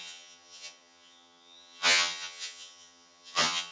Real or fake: fake